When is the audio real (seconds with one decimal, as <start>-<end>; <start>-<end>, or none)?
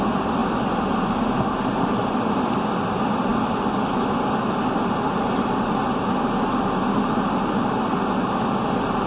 0.0-9.1